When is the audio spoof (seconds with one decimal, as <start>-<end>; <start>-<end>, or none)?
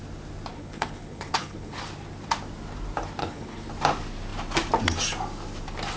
0.5-1.8; 3.2-3.7